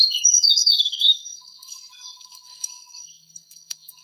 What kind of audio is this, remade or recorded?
remade